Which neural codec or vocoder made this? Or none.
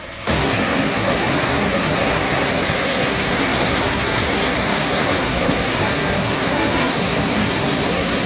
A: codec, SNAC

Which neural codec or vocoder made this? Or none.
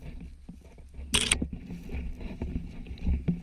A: none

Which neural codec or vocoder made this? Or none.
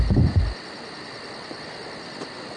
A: none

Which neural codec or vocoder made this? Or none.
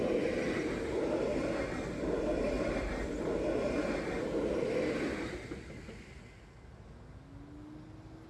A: none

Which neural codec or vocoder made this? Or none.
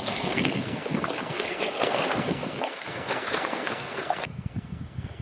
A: codec, SNAC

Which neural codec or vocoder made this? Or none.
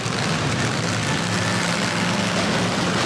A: none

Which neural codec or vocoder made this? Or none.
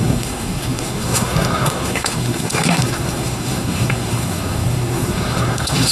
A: codec, SNAC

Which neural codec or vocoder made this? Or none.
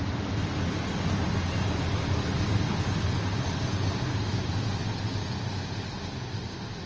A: none